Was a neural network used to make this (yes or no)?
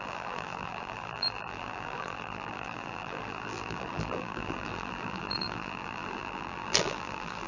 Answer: yes